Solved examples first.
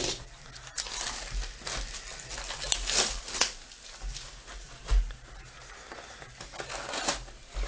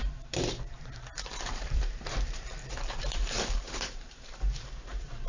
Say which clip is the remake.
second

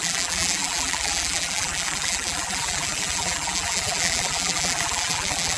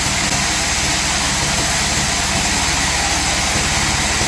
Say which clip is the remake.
first